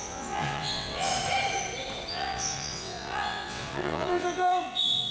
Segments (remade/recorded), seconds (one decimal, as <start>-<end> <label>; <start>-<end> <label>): 0.0-1.1 remade; 1.1-2.1 recorded; 2.1-5.1 remade